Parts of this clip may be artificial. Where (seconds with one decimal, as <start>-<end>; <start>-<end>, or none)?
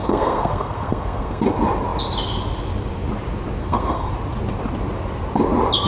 0.0-1.4; 3.6-4.1